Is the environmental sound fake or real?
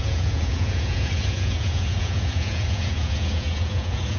fake